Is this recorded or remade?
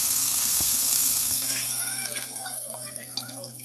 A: remade